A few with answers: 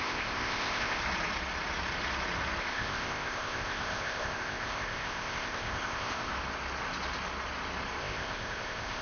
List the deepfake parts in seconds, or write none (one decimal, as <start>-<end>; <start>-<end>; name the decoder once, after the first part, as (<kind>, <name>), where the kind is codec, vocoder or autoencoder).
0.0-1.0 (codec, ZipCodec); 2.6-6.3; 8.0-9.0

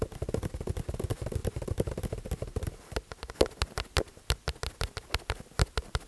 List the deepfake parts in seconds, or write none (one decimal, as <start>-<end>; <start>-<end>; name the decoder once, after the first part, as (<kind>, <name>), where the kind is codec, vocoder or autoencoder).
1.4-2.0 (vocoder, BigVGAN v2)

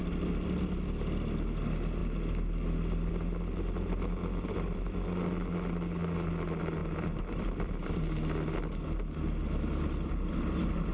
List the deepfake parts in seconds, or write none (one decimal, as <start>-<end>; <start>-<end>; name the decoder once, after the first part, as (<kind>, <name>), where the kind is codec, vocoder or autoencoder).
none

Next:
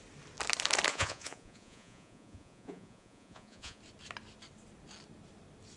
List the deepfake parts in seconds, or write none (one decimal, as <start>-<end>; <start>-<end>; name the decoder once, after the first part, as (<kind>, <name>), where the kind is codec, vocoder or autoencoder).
0.9-3.8 (vocoder, Vocos)

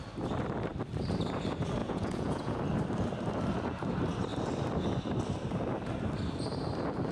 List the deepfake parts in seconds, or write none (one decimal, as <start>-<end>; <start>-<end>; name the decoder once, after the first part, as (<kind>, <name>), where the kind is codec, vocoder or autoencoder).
1.8-2.6 (vocoder, Vocos)

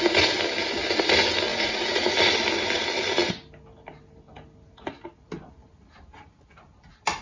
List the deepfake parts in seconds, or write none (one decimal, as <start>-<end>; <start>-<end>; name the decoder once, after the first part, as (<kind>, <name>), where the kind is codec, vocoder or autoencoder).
1.5-2.3 (vocoder, Vocos)

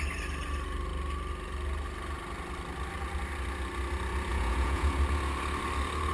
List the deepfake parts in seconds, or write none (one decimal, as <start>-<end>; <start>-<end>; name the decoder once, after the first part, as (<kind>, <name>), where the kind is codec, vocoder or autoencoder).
4.3-5.0 (vocoder, Vocos)